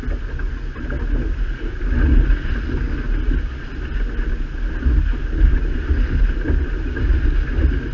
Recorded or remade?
recorded